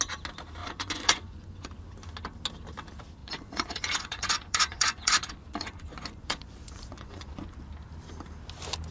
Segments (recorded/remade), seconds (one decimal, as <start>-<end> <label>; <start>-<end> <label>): 0.0-0.6 recorded; 0.6-1.7 remade; 1.7-3.2 recorded; 3.2-7.6 remade; 7.6-8.9 recorded